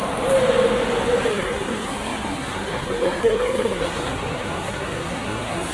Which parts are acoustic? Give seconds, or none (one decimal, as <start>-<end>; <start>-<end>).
0.0-1.3